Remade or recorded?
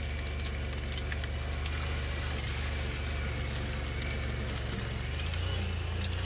recorded